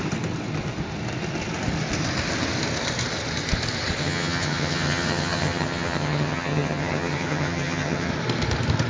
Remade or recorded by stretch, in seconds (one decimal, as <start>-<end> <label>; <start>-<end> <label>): 0.0-4.0 recorded; 4.0-8.1 remade; 8.1-8.9 recorded